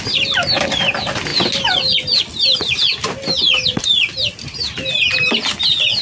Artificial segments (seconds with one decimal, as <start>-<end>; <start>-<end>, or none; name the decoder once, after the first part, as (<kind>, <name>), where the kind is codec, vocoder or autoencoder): none

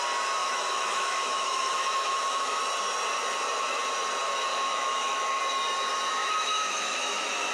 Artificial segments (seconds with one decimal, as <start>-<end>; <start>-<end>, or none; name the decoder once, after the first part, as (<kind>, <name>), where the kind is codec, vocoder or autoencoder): 0.4-2.6 (autoencoder, DAC-VAE); 4.5-5.4; 6.2-7.5

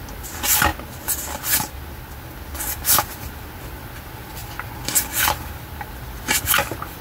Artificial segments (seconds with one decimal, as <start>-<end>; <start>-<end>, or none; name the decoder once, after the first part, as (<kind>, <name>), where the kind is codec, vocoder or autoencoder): none

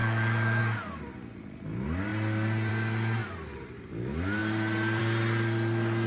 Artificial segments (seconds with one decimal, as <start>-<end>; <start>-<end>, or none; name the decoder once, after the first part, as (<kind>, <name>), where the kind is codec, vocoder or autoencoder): 0.0-0.6 (autoencoder, DAC-VAE)

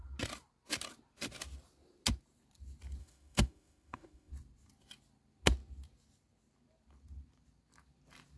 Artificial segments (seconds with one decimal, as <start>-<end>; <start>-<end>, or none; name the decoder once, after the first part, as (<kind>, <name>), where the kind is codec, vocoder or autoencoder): 3.0-4.3 (autoencoder, DAC-VAE)